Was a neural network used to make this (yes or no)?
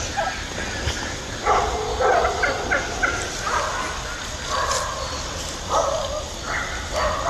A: no